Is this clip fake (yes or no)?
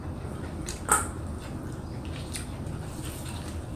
no